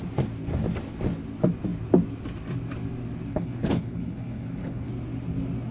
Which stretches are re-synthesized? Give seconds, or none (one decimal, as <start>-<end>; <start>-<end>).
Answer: 3.3-4.9